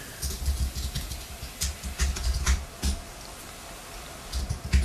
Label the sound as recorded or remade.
recorded